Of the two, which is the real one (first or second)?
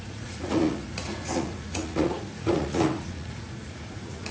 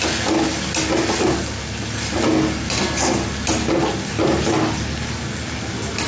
second